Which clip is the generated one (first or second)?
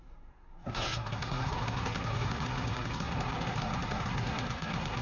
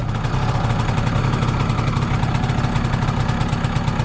first